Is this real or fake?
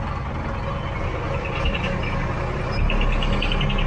real